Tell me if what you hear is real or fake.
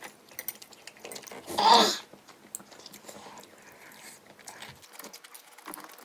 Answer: real